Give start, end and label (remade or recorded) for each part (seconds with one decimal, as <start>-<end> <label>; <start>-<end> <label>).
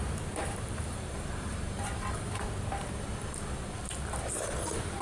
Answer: 0.0-3.0 remade; 3.0-5.0 recorded